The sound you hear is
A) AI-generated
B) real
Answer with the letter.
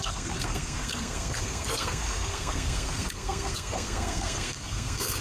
A